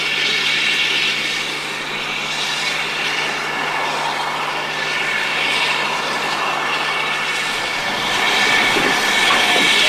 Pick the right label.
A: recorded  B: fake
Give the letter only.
A